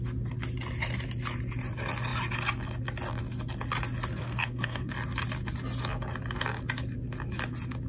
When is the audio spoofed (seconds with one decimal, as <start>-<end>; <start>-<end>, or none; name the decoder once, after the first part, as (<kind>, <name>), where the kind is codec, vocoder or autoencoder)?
4.2-4.9 (codec, SNAC)